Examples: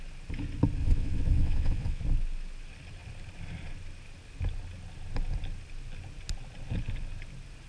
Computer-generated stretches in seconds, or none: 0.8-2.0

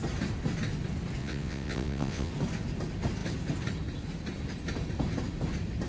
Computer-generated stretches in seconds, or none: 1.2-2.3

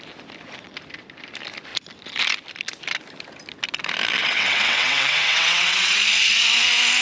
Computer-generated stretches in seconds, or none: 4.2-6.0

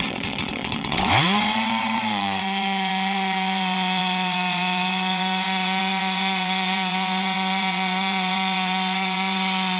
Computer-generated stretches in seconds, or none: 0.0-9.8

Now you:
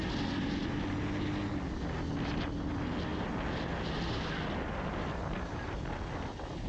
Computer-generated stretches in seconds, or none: none